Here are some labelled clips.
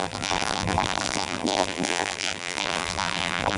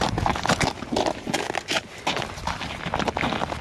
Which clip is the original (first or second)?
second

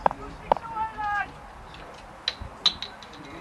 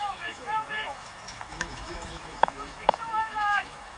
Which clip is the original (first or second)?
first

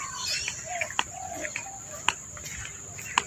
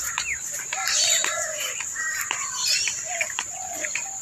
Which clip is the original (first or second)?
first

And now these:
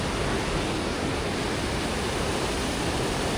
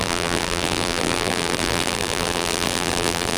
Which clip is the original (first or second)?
first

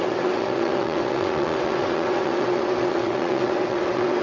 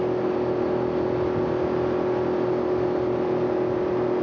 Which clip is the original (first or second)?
second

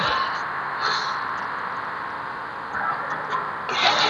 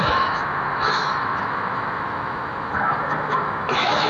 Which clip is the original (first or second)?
first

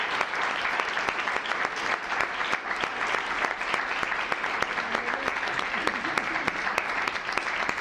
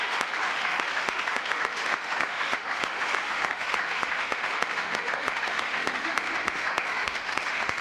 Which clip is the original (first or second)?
first